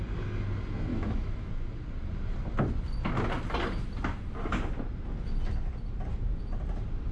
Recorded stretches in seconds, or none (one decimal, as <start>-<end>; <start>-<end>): 0.0-0.9; 1.5-7.1